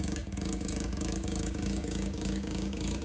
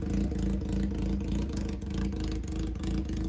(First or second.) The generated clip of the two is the first